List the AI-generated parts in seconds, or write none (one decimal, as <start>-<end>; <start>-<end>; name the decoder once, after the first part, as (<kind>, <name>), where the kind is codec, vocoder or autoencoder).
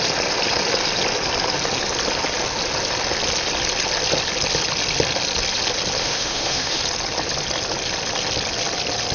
6.0-6.8 (autoencoder, DAC-VAE)